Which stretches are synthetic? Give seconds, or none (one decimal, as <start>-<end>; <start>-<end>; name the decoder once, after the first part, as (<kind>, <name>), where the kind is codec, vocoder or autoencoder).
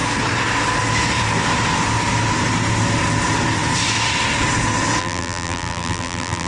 5.0-6.5 (vocoder, BigVGAN v2)